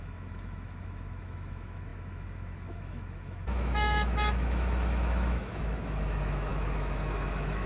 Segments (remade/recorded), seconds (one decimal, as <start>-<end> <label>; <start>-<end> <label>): 0.0-7.7 remade